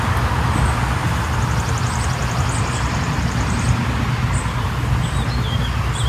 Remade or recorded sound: recorded